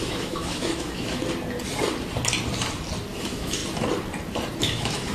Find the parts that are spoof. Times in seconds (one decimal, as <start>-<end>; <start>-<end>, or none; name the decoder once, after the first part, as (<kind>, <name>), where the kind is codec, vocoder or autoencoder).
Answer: 0.0-1.2 (autoencoder, DAC-VAE); 3.2-3.6; 4.6-5.1